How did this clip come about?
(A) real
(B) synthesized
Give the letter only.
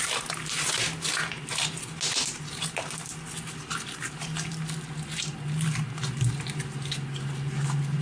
A